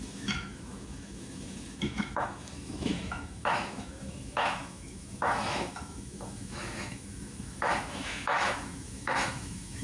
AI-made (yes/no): yes